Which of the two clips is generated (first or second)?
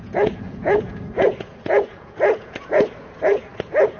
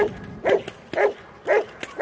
first